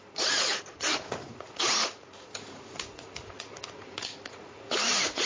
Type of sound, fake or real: fake